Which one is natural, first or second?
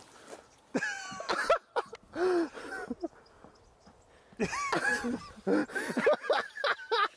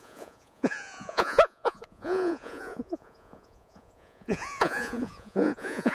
first